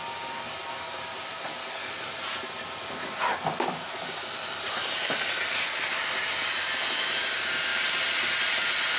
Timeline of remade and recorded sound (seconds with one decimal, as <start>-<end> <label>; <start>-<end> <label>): 0.0-7.7 recorded; 7.7-9.0 remade